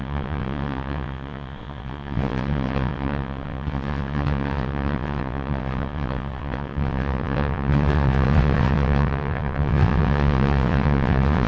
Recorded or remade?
remade